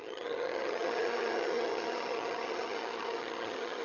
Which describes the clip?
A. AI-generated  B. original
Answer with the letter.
A